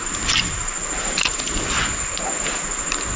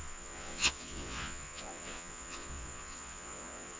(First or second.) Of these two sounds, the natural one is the first